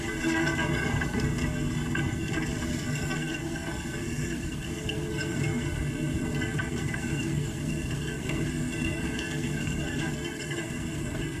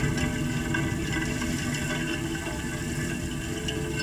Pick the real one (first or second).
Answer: second